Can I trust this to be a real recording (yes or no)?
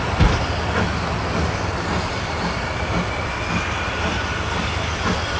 yes